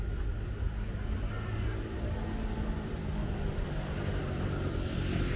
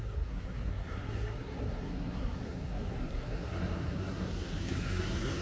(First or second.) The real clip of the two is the first